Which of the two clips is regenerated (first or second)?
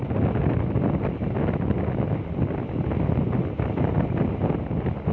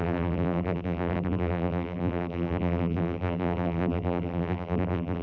second